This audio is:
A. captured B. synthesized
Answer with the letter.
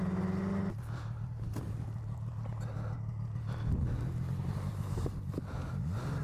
A